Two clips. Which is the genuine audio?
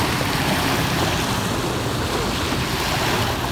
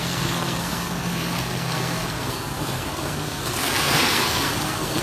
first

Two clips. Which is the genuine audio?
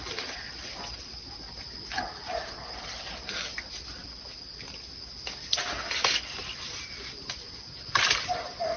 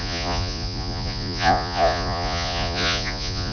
first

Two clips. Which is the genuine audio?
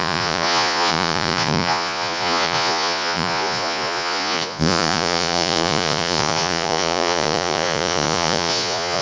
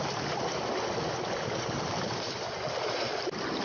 second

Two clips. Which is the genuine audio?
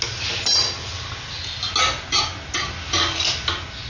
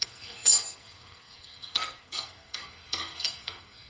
first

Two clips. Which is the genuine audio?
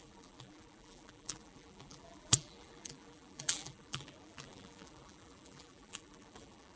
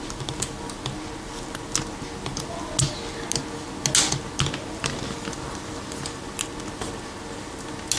second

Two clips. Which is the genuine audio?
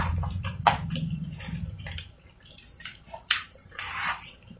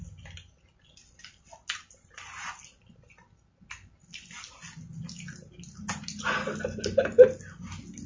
second